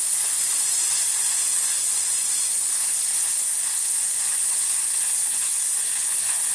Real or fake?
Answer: fake